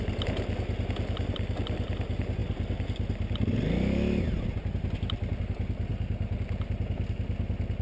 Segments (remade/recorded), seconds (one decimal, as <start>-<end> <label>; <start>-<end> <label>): 0.0-7.8 recorded